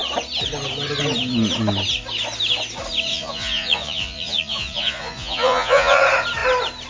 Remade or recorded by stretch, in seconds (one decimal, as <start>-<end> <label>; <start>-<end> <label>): 0.0-3.1 recorded; 3.1-6.0 remade; 6.0-6.9 recorded